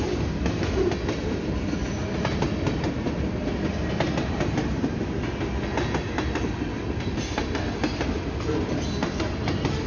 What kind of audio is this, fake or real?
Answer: real